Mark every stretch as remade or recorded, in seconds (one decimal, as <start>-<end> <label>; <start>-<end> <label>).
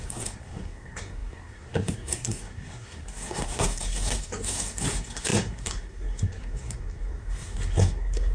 0.0-8.3 remade